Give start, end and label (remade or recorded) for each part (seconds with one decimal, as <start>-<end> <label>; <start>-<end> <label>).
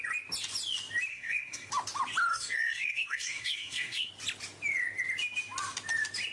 0.0-1.1 recorded; 1.1-1.7 remade; 1.7-2.3 recorded; 2.3-4.1 remade; 4.1-6.3 recorded